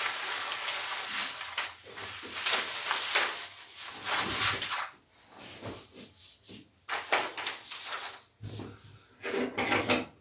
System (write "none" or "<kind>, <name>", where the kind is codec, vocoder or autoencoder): none